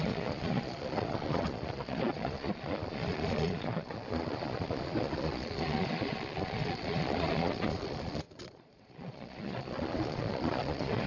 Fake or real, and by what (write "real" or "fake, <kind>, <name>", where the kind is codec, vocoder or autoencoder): fake, vocoder, Vocos